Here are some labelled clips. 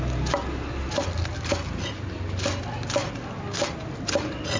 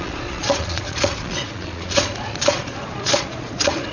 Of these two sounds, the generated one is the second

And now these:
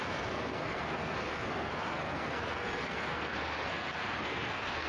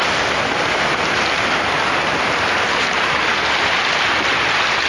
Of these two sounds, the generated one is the first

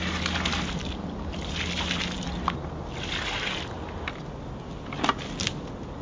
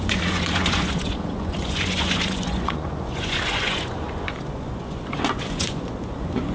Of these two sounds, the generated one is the second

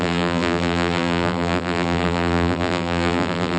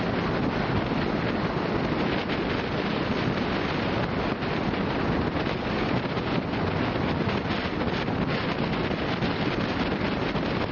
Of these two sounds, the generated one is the first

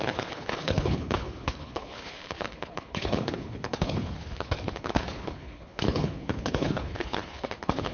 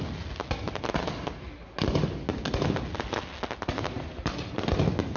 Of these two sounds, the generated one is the first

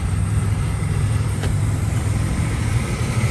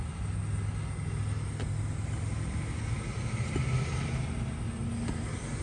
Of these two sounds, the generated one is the first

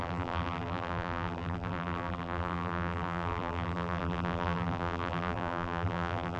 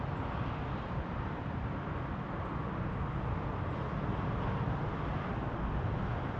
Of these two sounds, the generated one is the first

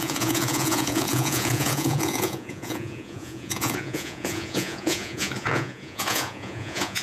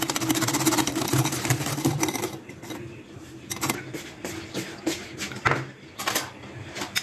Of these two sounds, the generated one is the first